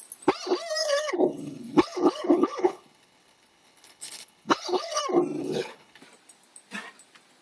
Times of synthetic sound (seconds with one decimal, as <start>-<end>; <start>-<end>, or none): 0.8-5.0; 5.4-6.0